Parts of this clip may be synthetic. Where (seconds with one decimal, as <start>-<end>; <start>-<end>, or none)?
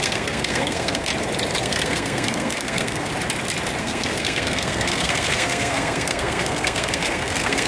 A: 0.0-1.1; 1.6-3.1; 3.8-7.7